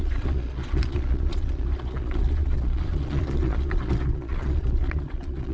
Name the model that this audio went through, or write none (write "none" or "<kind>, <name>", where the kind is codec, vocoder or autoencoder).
vocoder, Vocos